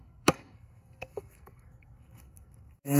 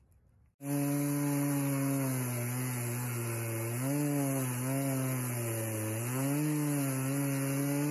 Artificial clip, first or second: first